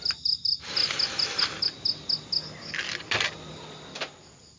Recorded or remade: recorded